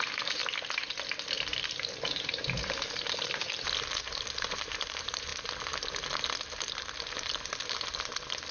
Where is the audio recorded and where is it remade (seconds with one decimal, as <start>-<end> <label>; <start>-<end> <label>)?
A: 0.0-0.4 remade; 0.4-1.7 recorded; 1.7-5.3 remade; 5.3-8.5 recorded